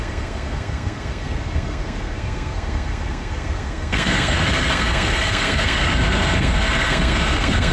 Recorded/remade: remade